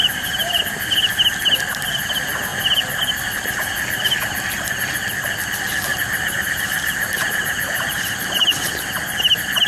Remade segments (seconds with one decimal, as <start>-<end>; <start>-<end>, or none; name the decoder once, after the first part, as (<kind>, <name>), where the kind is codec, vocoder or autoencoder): 0.0-0.6 (vocoder, BigVGAN v2); 5.9-8.7